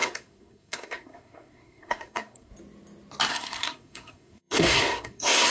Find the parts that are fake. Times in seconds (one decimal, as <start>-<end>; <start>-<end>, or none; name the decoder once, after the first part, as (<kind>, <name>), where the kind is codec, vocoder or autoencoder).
0.0-2.5 (codec, SNAC); 3.3-5.5